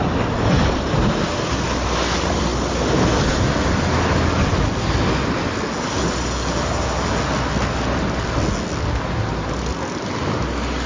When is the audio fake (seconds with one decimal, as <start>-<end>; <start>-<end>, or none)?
none